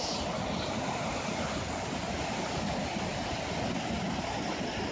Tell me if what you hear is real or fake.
real